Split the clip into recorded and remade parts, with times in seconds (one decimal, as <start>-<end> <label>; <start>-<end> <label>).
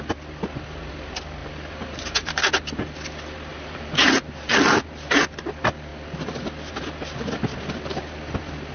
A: 0.0-1.4 recorded; 1.4-2.5 remade; 2.5-3.5 recorded; 3.5-4.5 remade; 4.5-8.7 recorded